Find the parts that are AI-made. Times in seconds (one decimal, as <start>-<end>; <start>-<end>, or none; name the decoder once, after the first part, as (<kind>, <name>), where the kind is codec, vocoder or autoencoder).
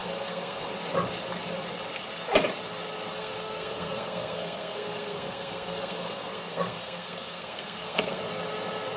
0.0-0.7 (codec, SNAC); 3.1-8.2